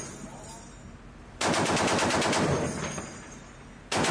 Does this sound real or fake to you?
real